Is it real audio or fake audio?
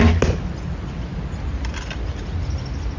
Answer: real